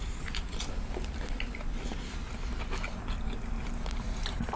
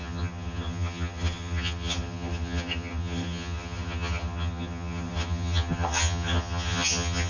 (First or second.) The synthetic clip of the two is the second